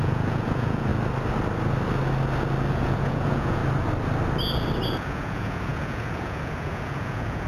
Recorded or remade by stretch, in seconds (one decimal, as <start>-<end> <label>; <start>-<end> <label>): 0.0-0.9 remade; 0.9-2.7 recorded; 2.7-3.6 remade; 3.6-4.9 recorded; 4.9-7.5 remade